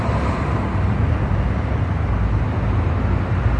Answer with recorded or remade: recorded